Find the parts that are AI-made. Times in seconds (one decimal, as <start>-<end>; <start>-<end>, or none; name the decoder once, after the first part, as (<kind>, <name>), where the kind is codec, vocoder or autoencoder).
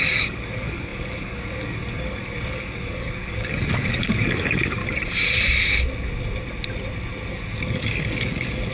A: 0.0-4.8 (codec, DAC); 7.3-8.7